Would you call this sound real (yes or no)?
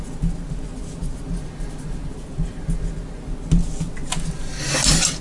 yes